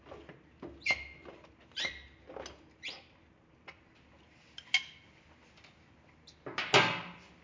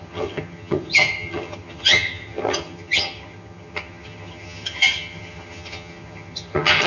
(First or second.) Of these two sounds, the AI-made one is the second